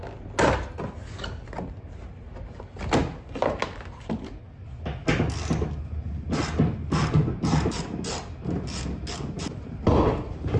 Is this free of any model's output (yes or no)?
yes